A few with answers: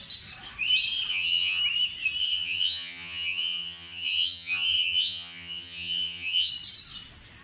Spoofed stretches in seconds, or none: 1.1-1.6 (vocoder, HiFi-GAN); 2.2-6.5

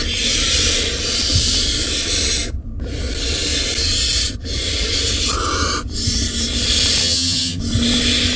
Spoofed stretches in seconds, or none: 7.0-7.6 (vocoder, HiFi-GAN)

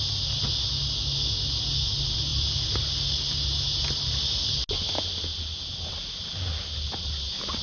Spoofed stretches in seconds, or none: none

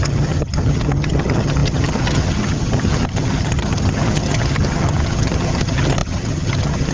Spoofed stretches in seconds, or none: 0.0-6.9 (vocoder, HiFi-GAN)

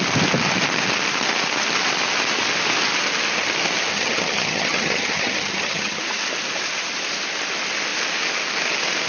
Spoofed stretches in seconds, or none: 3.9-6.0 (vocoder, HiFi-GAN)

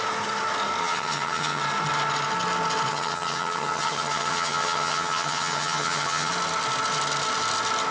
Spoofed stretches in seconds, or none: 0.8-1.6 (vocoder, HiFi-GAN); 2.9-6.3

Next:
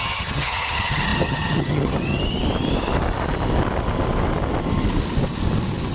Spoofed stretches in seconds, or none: 0.0-2.2 (vocoder, HiFi-GAN)

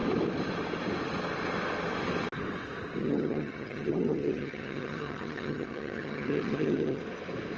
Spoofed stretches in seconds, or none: 3.0-7.0 (vocoder, HiFi-GAN)